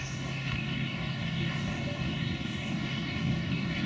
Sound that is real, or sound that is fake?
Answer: fake